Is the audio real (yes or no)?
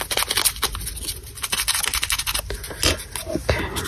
yes